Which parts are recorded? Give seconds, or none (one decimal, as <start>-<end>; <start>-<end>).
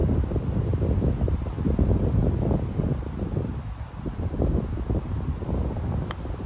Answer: 0.0-6.5